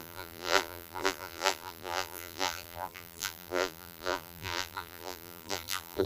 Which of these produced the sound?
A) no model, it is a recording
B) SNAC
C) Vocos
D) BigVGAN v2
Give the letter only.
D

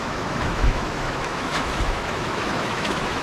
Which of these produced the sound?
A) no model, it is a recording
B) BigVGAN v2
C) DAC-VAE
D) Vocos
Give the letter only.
C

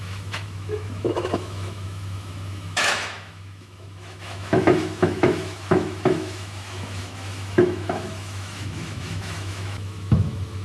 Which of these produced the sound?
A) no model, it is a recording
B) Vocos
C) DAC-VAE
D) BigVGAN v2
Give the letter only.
C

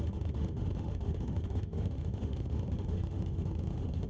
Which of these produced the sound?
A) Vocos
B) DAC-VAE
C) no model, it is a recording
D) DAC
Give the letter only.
B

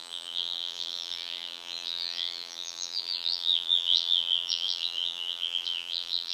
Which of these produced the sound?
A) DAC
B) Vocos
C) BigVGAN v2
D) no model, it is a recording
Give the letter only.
C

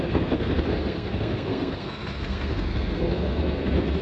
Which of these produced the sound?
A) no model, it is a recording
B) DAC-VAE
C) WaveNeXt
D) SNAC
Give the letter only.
D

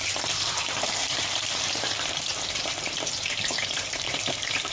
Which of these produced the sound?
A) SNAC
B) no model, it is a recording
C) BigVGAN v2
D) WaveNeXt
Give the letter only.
C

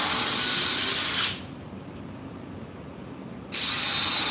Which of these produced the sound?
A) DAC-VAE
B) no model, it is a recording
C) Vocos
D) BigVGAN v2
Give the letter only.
B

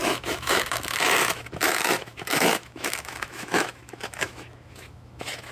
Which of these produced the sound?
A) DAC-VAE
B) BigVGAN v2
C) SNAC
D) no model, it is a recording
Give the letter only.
A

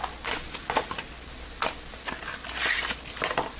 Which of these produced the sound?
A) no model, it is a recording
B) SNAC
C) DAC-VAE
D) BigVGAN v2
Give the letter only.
A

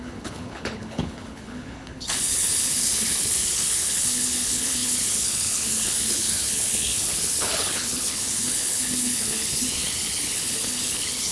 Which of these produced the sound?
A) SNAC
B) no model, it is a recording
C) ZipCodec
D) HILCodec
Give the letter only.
D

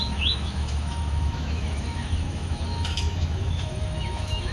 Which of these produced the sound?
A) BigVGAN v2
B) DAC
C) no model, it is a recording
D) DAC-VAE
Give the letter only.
D